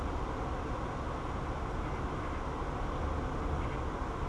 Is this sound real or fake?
real